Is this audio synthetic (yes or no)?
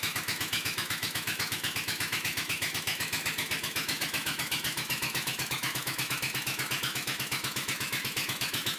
yes